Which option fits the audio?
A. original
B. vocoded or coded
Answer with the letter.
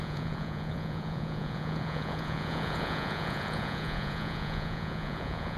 B